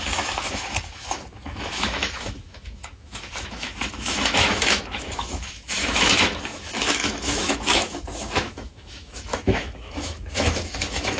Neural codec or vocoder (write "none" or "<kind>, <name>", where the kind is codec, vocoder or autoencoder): autoencoder, DAC-VAE